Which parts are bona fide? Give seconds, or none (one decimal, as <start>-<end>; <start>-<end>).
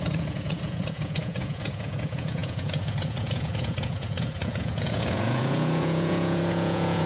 none